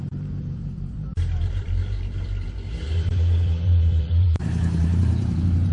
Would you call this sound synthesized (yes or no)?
yes